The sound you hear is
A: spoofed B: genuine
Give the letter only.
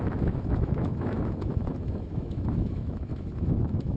A